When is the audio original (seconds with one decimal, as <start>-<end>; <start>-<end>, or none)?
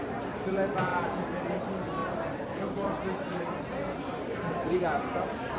0.0-2.0